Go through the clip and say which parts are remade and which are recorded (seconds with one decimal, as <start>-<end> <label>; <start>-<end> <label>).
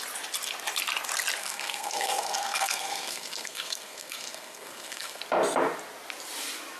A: 0.0-1.4 recorded; 1.4-5.2 remade; 5.2-6.8 recorded